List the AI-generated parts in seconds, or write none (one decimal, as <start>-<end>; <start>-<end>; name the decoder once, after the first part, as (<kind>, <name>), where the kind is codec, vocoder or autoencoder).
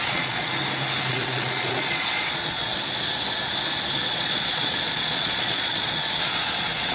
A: 0.0-0.6 (vocoder, Vocos); 1.1-2.7; 4.1-6.9